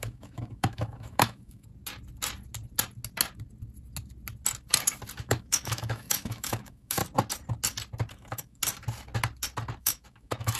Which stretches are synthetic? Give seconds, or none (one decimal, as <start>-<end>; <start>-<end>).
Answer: 0.0-1.7; 5.2-7.0; 8.1-8.6; 9.8-10.6